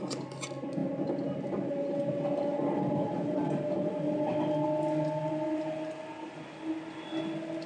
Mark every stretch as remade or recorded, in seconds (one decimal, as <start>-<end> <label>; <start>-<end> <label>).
0.0-7.7 recorded

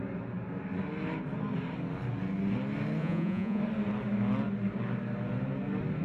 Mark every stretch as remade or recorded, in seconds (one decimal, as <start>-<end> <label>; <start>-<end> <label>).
0.0-3.0 recorded; 3.0-3.6 remade; 3.6-6.0 recorded

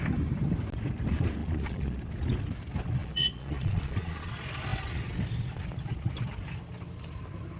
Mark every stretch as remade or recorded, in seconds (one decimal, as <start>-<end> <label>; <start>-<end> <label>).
0.0-1.4 recorded; 1.4-2.0 remade; 2.0-3.0 recorded; 3.0-4.3 remade; 4.3-7.6 recorded

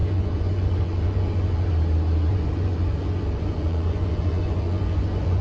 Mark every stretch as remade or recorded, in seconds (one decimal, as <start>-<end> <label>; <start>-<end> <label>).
0.0-1.7 remade; 1.7-2.3 recorded; 2.3-5.4 remade

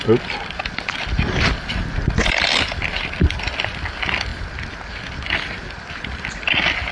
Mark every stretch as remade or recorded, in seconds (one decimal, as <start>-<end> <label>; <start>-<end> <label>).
0.0-6.9 recorded

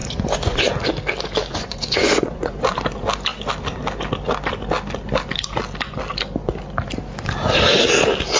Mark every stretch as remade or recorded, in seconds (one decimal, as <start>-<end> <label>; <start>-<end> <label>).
0.0-0.6 remade; 0.6-1.5 recorded; 1.5-2.8 remade; 2.8-8.4 recorded